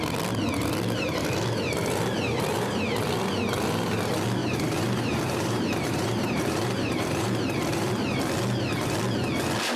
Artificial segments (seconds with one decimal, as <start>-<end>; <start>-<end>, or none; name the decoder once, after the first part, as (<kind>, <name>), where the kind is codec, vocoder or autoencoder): 4.4-7.9 (vocoder, BigVGAN v2)